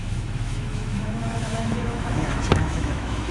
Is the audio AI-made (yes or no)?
yes